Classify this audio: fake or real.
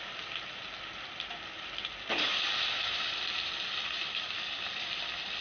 real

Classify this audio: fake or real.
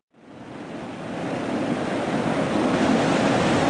real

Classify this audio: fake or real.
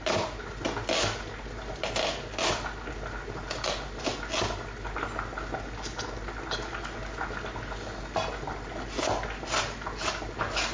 real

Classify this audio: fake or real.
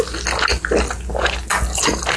real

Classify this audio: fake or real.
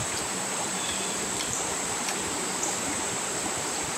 fake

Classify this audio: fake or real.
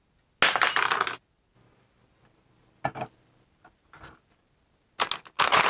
real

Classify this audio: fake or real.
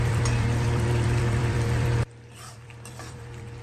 fake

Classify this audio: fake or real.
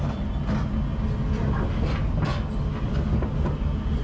real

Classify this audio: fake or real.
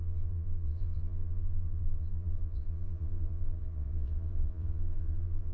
fake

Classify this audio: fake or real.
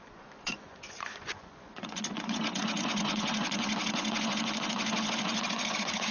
fake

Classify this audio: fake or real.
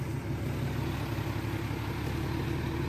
real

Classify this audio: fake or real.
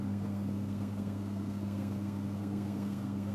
fake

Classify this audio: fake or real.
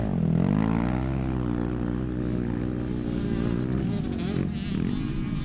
real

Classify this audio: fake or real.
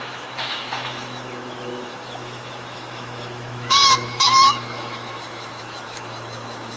fake